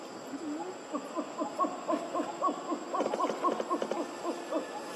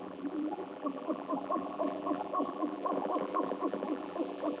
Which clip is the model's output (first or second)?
second